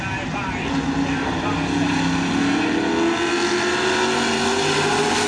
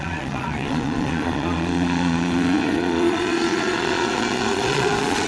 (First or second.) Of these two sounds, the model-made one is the second